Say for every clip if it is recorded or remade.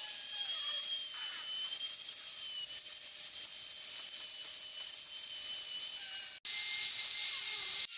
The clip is recorded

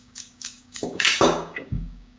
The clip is remade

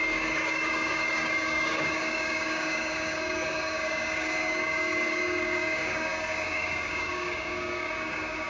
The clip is remade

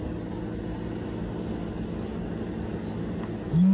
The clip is recorded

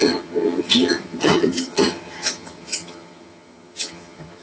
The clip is remade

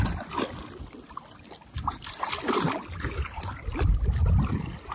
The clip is recorded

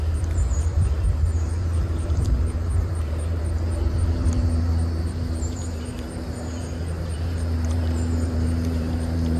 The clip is remade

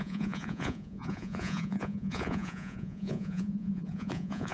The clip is remade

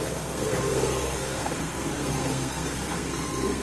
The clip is remade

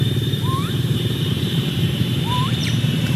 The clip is remade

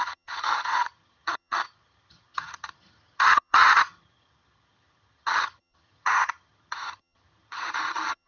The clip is remade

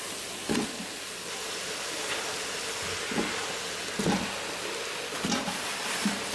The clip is recorded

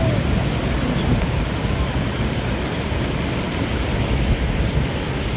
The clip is recorded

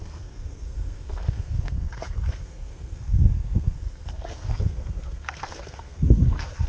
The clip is remade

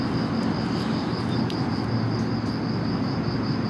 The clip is recorded